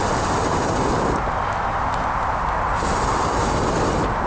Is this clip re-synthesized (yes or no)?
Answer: no